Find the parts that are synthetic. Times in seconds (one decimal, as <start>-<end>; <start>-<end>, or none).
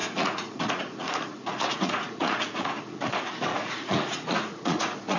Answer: 0.0-3.1; 3.5-5.2